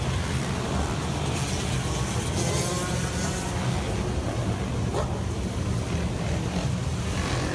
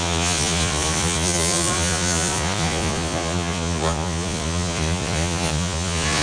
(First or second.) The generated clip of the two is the second